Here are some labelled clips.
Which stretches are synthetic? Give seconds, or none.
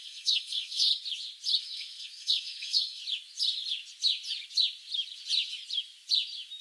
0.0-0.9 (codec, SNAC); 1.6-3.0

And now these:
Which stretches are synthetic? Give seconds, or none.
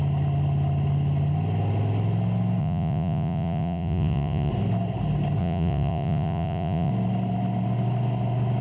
2.6-4.5 (vocoder, Vocos); 5.4-6.9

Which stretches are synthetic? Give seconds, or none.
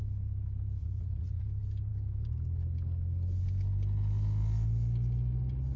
0.8-1.4 (vocoder, Vocos)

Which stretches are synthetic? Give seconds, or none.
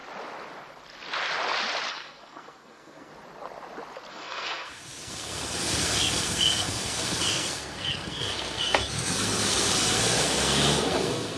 1.9-3.1 (codec, SNAC); 4.1-11.4